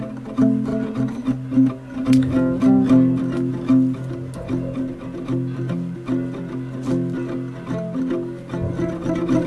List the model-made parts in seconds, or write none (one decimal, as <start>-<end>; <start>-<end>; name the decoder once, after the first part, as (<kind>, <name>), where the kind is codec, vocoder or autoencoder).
none